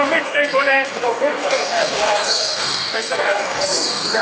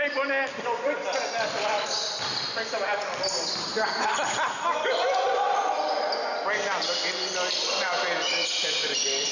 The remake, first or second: first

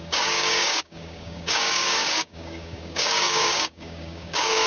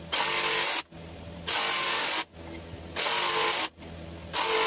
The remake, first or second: first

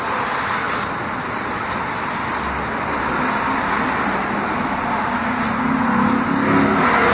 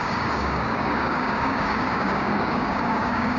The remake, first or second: second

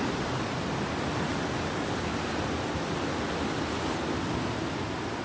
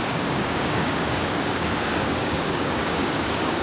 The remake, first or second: second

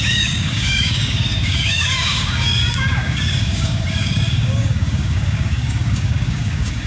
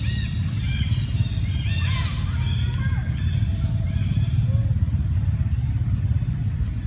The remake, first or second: first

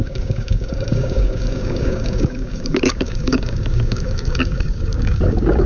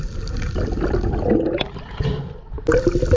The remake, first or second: first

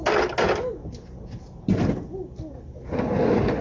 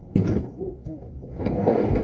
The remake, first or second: second